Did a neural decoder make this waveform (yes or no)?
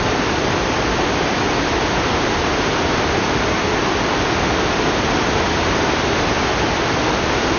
no